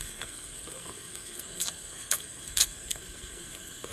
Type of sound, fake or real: fake